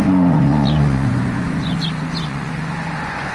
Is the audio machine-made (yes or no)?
yes